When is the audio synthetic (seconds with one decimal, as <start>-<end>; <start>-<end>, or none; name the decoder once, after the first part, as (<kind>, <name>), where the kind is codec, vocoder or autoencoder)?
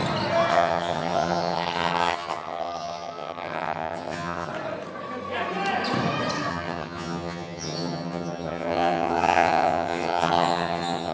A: 0.5-4.5 (vocoder, HiFi-GAN); 6.5-11.1